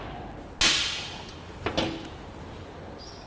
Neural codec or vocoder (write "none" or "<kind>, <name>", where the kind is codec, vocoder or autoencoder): none